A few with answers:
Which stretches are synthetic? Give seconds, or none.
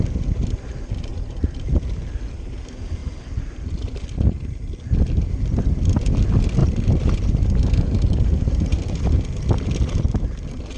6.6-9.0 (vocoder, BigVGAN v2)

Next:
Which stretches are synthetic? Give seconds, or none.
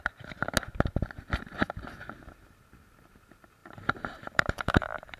3.6-5.2 (vocoder, BigVGAN v2)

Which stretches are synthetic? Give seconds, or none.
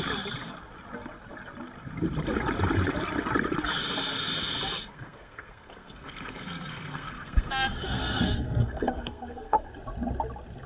4.9-9.7 (codec, SNAC)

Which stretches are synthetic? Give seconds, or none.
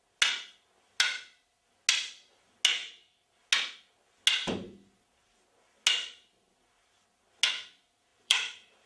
2.8-3.3 (vocoder, BigVGAN v2); 8.1-8.9